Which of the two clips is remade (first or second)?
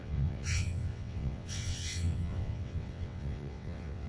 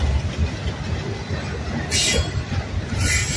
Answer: first